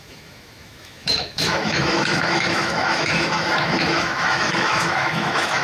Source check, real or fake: fake